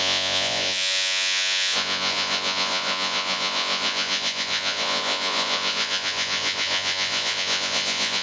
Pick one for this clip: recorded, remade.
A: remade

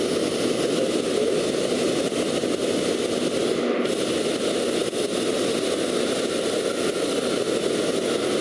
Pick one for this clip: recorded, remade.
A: recorded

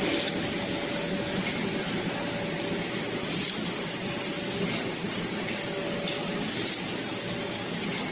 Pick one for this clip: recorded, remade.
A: recorded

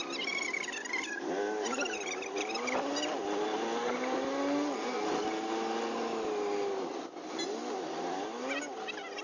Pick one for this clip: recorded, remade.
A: recorded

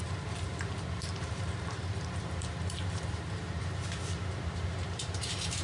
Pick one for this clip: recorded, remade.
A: remade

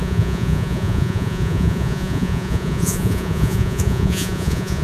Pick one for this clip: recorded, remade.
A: remade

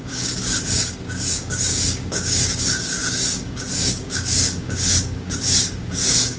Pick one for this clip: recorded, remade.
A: remade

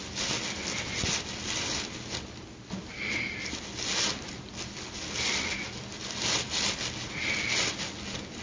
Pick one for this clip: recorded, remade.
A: recorded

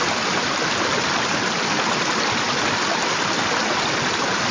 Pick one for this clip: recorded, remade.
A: recorded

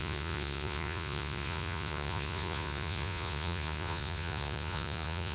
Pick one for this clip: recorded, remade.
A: remade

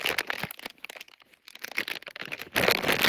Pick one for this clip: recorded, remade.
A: recorded